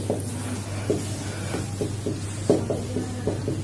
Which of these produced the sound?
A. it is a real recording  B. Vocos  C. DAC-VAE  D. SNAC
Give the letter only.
A